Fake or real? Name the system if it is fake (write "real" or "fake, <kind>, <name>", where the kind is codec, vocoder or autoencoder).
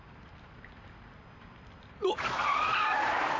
real